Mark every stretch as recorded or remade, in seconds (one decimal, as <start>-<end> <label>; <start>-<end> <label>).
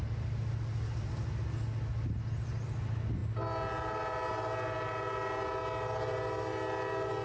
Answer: 0.0-7.2 recorded